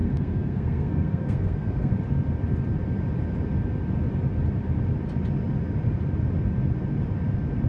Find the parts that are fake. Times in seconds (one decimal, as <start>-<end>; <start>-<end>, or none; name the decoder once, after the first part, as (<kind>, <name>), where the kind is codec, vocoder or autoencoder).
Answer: 0.0-1.9 (codec, SNAC)